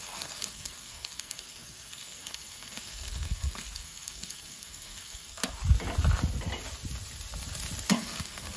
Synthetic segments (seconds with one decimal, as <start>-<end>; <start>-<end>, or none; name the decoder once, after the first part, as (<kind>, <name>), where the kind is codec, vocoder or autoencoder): 0.0-5.6 (codec, SNAC); 7.9-8.6